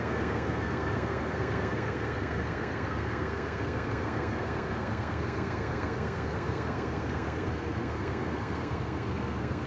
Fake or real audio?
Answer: fake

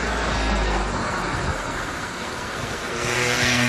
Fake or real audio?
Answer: fake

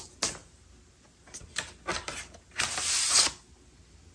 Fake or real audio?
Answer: real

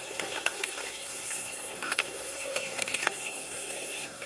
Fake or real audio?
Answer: fake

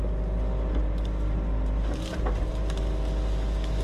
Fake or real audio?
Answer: real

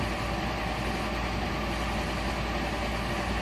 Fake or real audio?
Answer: real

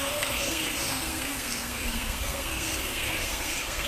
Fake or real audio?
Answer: fake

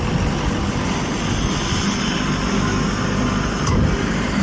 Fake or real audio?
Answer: real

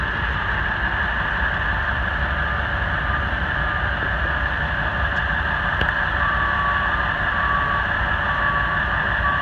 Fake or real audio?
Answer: real